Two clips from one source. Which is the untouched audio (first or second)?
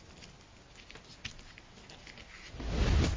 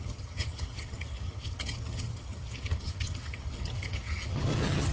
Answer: first